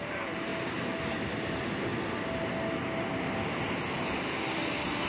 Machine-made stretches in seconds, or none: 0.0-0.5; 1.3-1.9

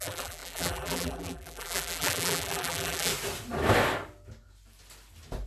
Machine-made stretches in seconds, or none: 0.0-3.1

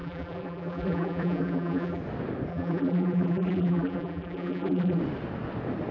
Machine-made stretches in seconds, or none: 0.0-2.0; 2.5-5.0

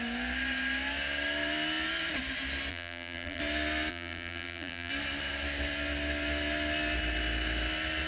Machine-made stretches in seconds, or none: 2.7-3.4; 3.9-4.9